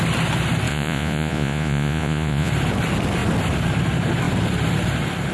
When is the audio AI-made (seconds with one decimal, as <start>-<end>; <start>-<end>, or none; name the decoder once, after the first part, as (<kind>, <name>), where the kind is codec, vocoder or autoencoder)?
0.7-2.5 (vocoder, Vocos)